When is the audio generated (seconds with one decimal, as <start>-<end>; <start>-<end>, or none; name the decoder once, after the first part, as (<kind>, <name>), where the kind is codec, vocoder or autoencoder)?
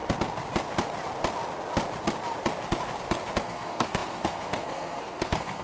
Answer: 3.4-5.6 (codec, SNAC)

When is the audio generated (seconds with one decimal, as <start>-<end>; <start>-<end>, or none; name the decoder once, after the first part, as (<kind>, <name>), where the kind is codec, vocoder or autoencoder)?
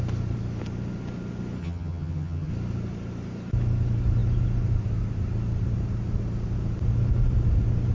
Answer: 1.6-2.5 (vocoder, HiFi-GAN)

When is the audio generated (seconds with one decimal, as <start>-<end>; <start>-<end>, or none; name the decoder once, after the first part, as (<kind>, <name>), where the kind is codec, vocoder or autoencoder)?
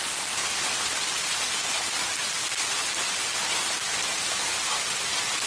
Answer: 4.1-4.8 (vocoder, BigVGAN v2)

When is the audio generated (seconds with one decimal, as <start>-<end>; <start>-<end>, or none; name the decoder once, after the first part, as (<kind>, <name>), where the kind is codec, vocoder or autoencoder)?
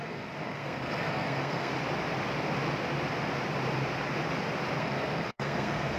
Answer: 0.0-1.7 (codec, SNAC); 4.8-6.0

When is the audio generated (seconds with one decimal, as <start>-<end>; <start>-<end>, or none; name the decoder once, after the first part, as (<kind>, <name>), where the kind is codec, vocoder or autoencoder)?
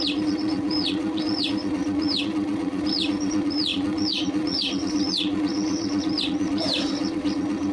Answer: 0.0-7.7 (vocoder, Vocos)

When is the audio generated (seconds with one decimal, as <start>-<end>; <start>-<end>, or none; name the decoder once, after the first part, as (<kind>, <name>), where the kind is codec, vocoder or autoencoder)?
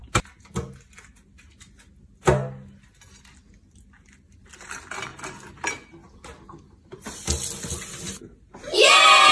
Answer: none